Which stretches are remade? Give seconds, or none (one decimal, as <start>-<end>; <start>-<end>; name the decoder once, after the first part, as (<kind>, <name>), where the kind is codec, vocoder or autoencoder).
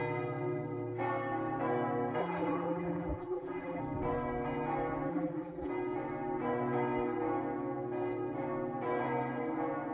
2.2-3.8 (vocoder, BigVGAN v2); 5.1-5.7